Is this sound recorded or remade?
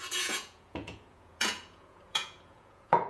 remade